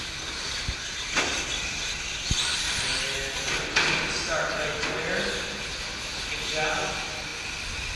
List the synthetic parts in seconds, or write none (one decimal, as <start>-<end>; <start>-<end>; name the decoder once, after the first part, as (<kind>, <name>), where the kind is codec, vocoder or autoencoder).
none